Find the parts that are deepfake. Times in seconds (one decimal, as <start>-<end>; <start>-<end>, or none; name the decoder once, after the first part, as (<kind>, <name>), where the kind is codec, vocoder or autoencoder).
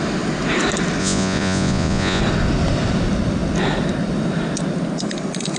1.0-2.2 (vocoder, Vocos)